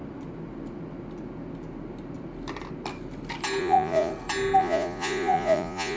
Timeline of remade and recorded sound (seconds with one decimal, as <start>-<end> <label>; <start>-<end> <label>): 0.0-3.6 recorded; 3.6-4.1 remade; 4.1-4.6 recorded; 4.6-6.0 remade